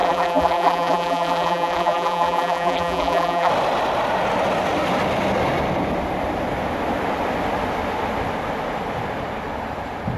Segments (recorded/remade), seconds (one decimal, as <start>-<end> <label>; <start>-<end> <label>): 0.0-3.5 remade; 3.5-10.2 recorded